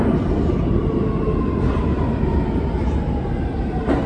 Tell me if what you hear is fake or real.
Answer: real